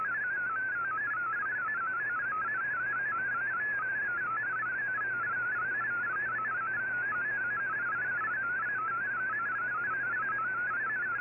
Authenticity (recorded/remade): recorded